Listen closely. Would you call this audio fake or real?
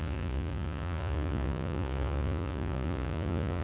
fake